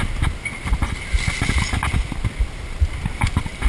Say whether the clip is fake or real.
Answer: real